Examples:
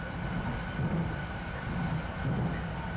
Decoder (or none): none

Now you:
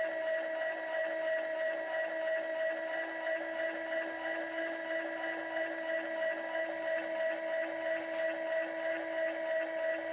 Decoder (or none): none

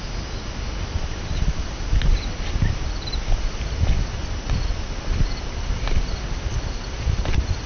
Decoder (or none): none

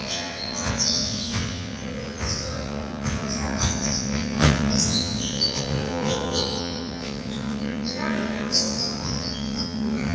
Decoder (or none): vocoder, WaveNeXt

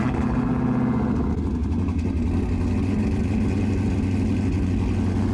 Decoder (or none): none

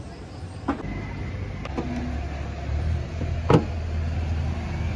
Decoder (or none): none